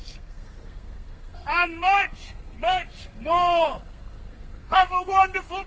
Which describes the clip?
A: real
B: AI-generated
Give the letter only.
B